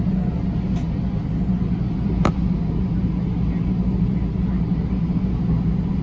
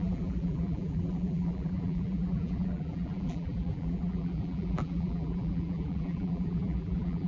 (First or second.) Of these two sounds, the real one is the first